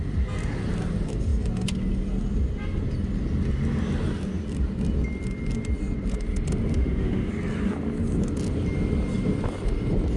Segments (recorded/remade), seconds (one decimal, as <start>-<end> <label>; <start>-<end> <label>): 0.0-6.7 recorded; 6.7-7.3 remade; 7.3-10.2 recorded